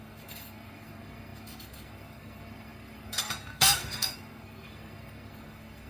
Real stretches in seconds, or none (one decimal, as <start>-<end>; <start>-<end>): none